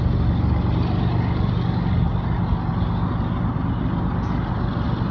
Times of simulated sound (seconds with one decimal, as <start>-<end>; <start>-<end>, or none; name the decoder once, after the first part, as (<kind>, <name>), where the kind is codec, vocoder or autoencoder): none

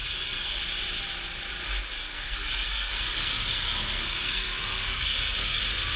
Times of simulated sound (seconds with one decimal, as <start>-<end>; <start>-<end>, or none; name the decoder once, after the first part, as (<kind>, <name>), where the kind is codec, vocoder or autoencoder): 0.0-0.6 (codec, SNAC); 2.0-5.6

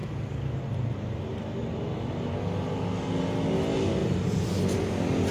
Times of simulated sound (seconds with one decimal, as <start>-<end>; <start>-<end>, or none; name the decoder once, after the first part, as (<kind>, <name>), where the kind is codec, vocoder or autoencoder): 0.0-2.3 (vocoder, BigVGAN v2); 4.0-4.6